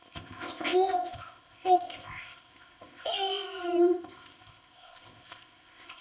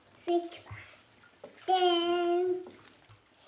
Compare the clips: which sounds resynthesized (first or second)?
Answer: first